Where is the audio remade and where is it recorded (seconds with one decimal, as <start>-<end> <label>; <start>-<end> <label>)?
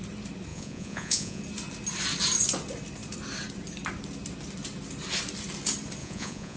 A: 0.0-0.5 recorded; 0.5-1.4 remade; 1.4-6.0 recorded; 6.0-6.6 remade